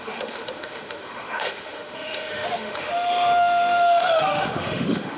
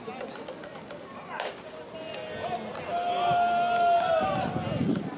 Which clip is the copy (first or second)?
first